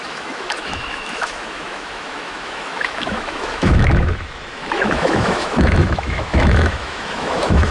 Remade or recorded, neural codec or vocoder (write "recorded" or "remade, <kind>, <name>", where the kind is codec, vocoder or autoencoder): remade, autoencoder, DAC-VAE